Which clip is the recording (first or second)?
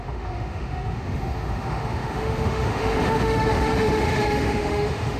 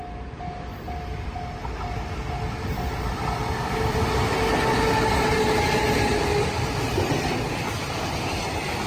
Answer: second